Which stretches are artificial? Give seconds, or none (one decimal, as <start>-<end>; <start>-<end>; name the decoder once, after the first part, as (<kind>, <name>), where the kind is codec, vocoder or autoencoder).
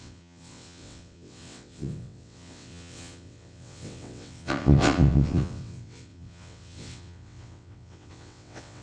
0.0-8.8 (vocoder, WaveNeXt)